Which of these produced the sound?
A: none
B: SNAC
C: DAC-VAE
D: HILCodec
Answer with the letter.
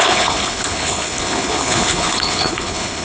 D